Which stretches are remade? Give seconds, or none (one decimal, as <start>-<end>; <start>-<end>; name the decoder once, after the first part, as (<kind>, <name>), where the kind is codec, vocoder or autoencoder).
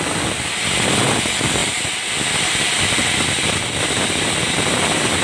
1.6-4.0 (vocoder, BigVGAN v2)